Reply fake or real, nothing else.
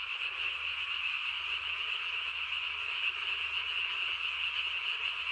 real